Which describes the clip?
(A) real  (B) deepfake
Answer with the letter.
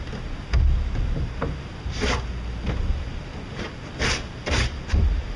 A